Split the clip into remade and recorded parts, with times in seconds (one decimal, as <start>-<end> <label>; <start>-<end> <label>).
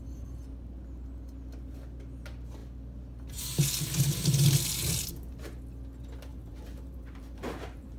0.0-6.3 recorded; 6.3-8.0 remade